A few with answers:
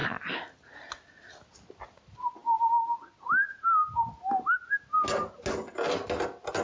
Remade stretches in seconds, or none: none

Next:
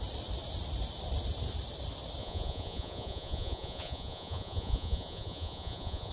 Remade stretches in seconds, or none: 2.2-6.1 (vocoder, Vocos)